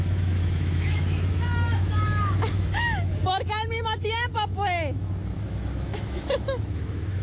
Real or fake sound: fake